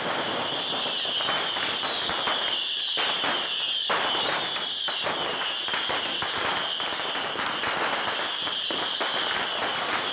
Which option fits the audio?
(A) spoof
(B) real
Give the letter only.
B